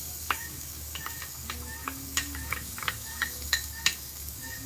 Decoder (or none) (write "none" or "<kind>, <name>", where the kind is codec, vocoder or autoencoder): codec, DAC